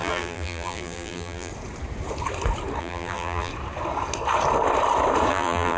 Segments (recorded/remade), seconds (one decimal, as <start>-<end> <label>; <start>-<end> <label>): 0.0-1.5 remade; 1.5-2.8 recorded; 2.8-3.5 remade; 3.5-5.3 recorded; 5.3-5.8 remade